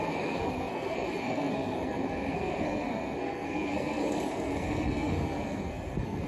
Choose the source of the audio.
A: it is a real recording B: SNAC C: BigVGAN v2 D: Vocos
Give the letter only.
B